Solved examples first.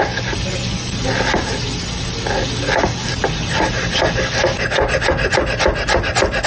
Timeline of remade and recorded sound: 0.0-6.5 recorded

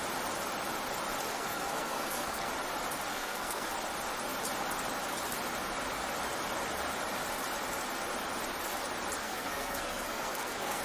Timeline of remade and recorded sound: 0.0-1.3 recorded; 1.3-2.5 remade; 2.5-3.1 recorded; 3.1-3.7 remade; 3.7-9.2 recorded; 9.2-10.8 remade

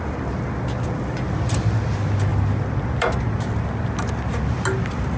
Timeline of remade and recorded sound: 0.0-5.2 recorded

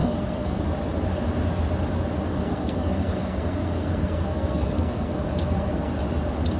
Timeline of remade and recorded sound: 0.0-0.6 remade; 0.6-2.3 recorded; 2.3-6.0 remade; 6.0-6.6 recorded